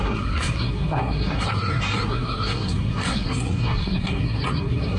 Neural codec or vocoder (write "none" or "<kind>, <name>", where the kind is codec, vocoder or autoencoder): codec, SNAC